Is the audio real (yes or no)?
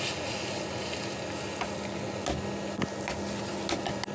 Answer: yes